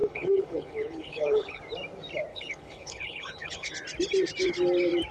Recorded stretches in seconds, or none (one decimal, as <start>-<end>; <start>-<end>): 1.6-2.3; 3.7-5.1